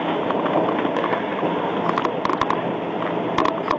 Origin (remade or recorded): recorded